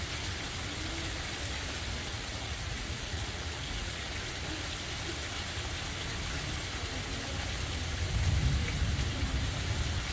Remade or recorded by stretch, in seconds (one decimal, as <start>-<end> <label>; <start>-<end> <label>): 0.0-2.1 recorded; 2.1-4.1 remade; 4.1-10.1 recorded